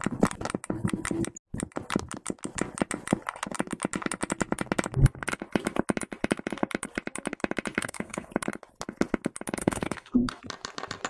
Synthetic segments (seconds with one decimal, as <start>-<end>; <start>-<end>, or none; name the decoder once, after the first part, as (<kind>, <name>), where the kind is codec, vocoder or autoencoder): 7.8-8.3 (codec, SNAC); 9.6-10.4